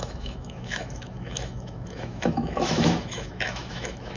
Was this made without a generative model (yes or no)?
no